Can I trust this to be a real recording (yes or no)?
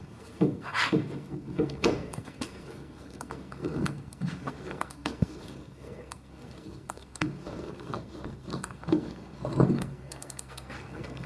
no